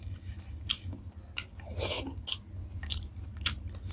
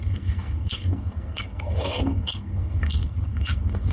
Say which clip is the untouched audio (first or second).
first